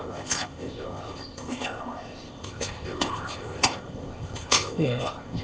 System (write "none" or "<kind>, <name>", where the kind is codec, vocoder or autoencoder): codec, ZipCodec